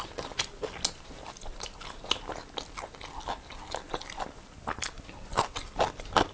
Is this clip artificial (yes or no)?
no